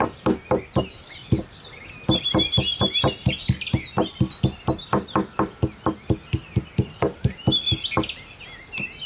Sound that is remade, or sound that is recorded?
recorded